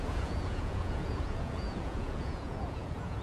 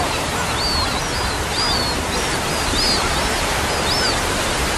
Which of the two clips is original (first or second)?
second